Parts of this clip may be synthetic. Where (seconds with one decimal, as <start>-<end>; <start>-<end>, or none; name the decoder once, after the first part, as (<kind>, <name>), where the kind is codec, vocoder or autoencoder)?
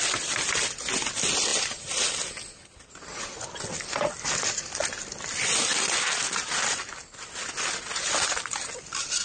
none